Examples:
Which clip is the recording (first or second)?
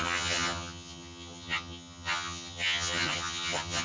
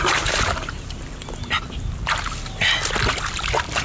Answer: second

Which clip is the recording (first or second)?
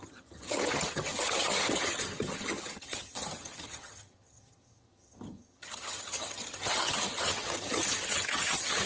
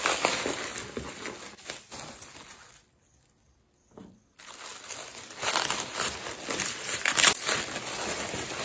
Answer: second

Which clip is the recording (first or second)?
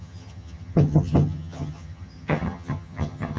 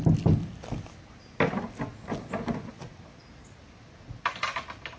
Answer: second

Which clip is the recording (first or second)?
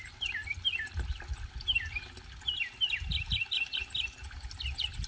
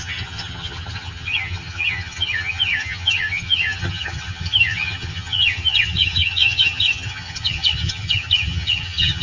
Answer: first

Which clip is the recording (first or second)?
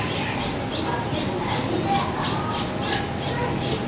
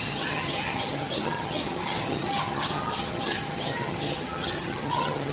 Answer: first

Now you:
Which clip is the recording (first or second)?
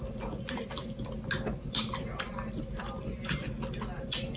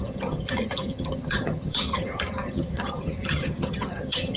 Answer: first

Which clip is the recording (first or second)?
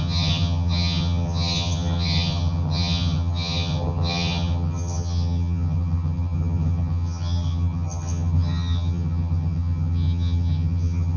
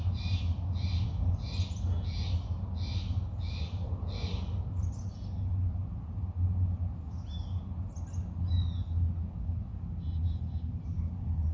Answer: second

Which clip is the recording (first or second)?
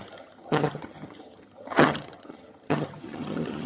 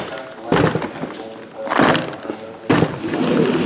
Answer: second